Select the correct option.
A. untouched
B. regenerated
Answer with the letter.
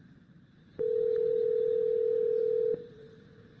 B